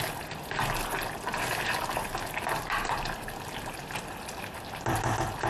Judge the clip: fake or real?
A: real